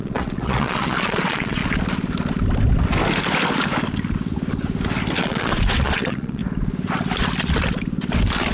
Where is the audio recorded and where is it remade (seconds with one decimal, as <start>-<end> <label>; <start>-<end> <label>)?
0.0-1.6 remade; 1.6-5.2 recorded; 5.2-6.4 remade; 6.4-8.5 recorded